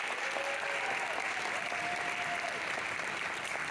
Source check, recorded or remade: recorded